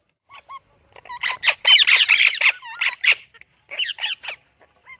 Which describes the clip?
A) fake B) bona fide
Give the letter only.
A